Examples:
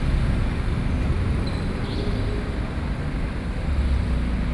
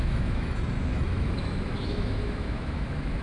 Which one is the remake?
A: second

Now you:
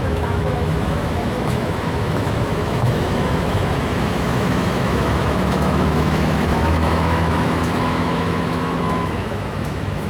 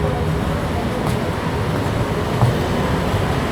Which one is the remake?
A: first